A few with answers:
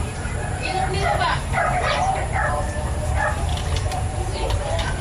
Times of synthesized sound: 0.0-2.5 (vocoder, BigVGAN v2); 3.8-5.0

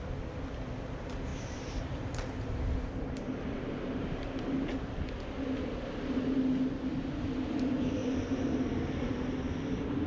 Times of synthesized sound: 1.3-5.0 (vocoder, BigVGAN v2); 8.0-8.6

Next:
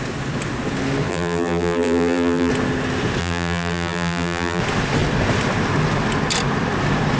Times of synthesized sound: 1.1-2.5 (vocoder, BigVGAN v2); 3.2-4.6

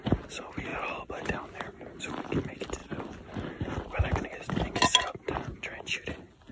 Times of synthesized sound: none